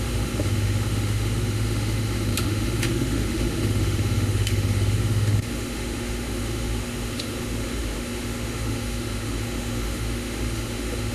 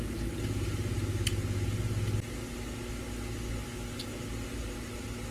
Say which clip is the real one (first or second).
second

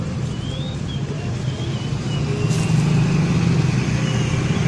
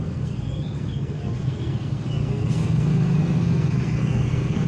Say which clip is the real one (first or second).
first